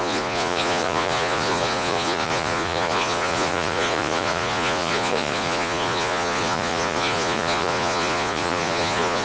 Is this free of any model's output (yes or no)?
no